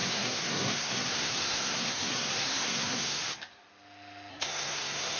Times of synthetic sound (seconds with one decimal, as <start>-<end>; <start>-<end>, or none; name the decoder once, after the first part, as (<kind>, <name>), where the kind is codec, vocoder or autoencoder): 0.0-3.2 (codec, SNAC); 4.3-5.2